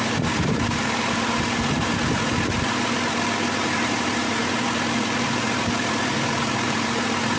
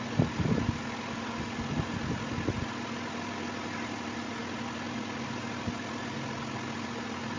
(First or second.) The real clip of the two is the second